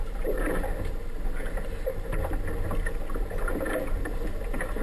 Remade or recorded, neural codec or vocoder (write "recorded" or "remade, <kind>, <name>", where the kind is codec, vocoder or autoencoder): recorded